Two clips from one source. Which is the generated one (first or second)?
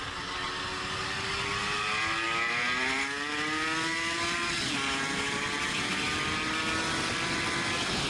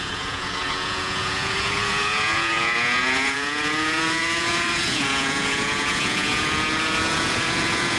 second